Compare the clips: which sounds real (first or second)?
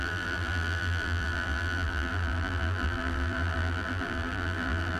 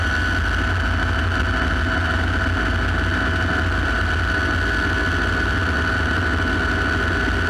second